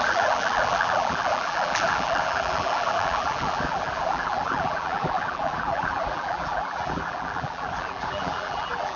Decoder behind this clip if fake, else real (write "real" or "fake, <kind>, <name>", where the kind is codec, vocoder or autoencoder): fake, vocoder, BigVGAN v2